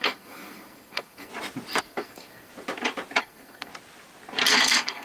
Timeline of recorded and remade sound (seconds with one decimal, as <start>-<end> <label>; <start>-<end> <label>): 0.0-1.3 remade; 1.3-1.8 recorded; 1.8-2.5 remade; 2.5-3.2 recorded; 3.2-3.7 remade; 3.7-4.5 recorded; 4.5-5.0 remade